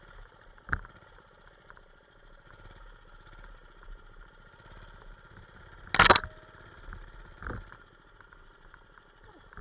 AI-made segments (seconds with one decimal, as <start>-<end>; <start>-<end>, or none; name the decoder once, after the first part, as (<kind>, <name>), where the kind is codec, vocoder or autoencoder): none